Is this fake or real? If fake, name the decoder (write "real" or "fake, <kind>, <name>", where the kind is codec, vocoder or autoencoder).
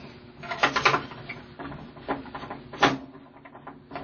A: real